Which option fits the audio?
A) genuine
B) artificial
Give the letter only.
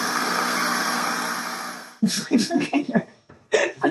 B